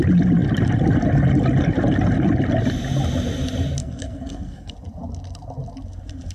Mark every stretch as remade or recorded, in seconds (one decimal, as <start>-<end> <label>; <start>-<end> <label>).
0.0-3.8 recorded; 3.8-4.7 remade; 4.7-6.3 recorded